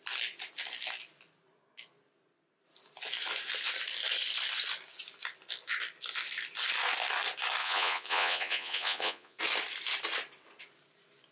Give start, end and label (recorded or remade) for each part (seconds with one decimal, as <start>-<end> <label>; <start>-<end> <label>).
0.0-7.6 recorded; 7.6-9.4 remade; 9.4-11.3 recorded